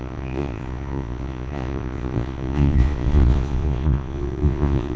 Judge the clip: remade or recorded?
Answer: remade